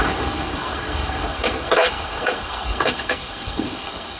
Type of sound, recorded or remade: remade